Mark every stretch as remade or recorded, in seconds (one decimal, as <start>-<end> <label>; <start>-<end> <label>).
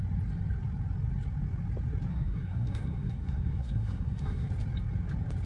0.0-2.1 recorded; 2.1-4.5 remade; 4.5-5.5 recorded